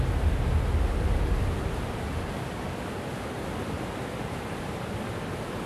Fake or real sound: real